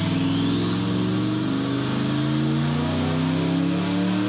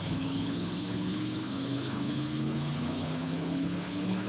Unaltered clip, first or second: first